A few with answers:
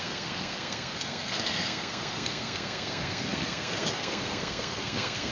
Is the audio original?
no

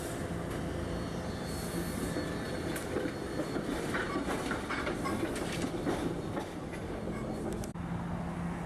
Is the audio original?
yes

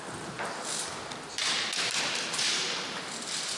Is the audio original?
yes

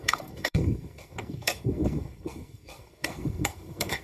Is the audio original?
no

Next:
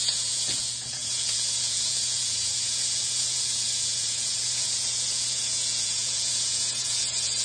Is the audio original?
no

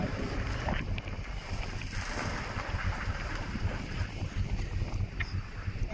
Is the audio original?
yes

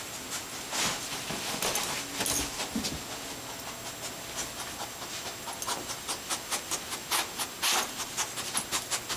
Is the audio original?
yes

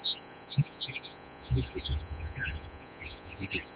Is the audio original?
no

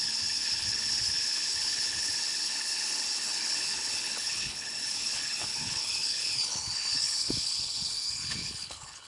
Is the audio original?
no